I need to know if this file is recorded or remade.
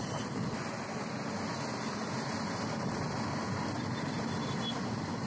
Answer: recorded